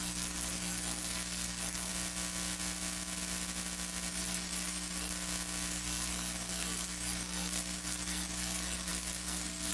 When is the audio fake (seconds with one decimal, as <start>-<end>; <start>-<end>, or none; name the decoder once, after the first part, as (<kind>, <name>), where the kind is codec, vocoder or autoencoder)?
0.0-1.9 (codec, SNAC); 4.1-5.1; 5.7-9.7